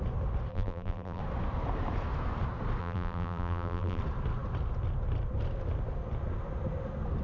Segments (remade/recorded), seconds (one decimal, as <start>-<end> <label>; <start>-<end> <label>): 0.0-0.5 recorded; 0.5-1.2 remade; 1.2-2.8 recorded; 2.8-4.0 remade; 4.0-7.2 recorded

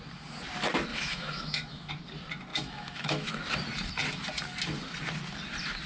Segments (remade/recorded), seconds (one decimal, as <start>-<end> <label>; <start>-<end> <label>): 0.0-0.9 recorded; 0.9-1.9 remade; 1.9-2.5 recorded; 2.5-3.3 remade; 3.3-5.9 recorded

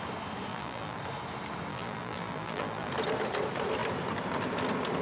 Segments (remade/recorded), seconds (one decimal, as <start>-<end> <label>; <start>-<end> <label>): 0.0-0.5 recorded; 0.5-1.0 remade; 1.0-1.7 recorded; 1.7-2.9 remade; 2.9-5.0 recorded

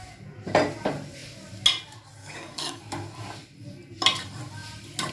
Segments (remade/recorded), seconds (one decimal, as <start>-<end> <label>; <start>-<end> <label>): 0.0-2.2 recorded; 2.2-2.8 remade; 2.8-5.1 recorded

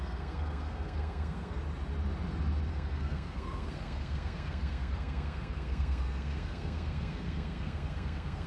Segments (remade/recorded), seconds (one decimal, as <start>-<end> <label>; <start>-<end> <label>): 0.0-1.6 remade; 1.6-2.7 recorded; 2.7-8.5 remade

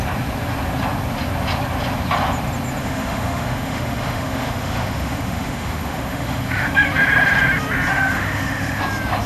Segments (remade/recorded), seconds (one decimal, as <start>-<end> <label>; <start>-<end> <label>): 0.0-2.8 recorded; 2.8-6.9 remade; 6.9-7.9 recorded; 7.9-8.8 remade; 8.8-9.3 recorded

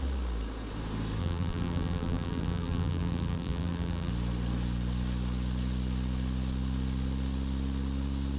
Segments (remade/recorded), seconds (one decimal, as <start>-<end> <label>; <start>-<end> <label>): 0.0-1.2 recorded; 1.2-4.1 remade; 4.1-8.4 recorded

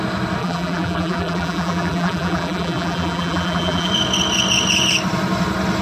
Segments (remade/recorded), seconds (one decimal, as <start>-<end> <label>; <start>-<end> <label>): 0.0-0.4 recorded; 0.4-3.9 remade; 3.9-5.8 recorded